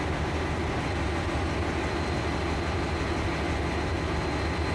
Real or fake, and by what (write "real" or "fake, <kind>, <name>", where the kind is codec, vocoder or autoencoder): real